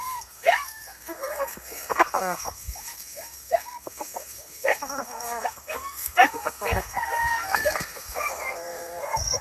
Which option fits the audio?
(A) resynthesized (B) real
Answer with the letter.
A